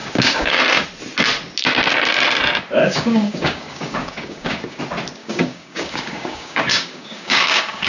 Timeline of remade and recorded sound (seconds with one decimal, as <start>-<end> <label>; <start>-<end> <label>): 0.0-0.6 remade; 0.6-2.8 recorded; 2.8-4.8 remade; 4.8-5.2 recorded; 5.2-7.9 remade